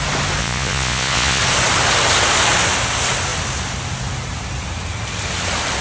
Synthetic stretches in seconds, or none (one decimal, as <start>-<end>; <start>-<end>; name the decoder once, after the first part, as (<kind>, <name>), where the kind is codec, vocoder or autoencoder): 0.4-1.4 (vocoder, Vocos)

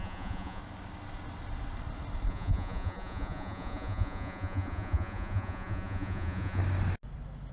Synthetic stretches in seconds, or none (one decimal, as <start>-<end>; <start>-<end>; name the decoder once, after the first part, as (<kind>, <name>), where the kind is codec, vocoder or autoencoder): 0.0-0.6 (vocoder, Vocos); 2.3-6.6

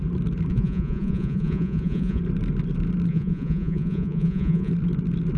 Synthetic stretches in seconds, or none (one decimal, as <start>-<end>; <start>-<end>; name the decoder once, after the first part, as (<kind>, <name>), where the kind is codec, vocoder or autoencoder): 0.5-2.2 (vocoder, Vocos); 3.1-4.7

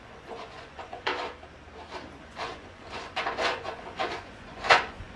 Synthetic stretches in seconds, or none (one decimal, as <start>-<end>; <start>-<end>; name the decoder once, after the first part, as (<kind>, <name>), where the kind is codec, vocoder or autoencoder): 0.0-1.1 (vocoder, Vocos); 2.2-5.2

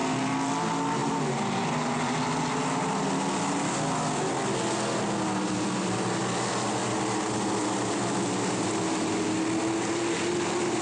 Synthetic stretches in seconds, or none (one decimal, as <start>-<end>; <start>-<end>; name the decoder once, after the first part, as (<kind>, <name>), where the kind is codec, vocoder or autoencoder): none

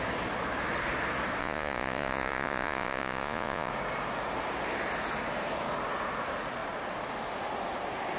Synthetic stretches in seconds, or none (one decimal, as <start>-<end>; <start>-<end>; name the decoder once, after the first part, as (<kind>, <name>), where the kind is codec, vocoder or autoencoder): 1.4-3.7 (vocoder, Vocos)

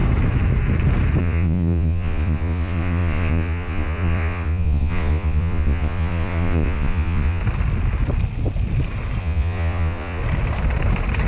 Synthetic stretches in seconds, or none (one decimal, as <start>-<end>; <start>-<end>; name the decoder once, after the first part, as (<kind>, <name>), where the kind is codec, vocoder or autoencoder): 1.2-7.4 (vocoder, Vocos); 9.2-10.2